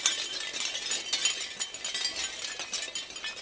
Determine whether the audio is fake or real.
real